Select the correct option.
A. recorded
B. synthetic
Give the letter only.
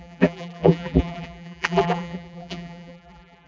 B